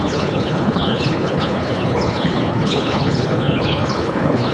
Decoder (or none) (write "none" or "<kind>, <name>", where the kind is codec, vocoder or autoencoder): codec, HILCodec